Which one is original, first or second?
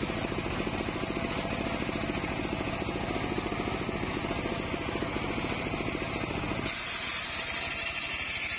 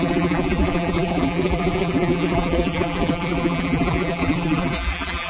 first